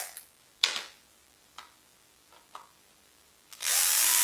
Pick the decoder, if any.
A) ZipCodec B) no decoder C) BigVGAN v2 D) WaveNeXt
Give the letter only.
C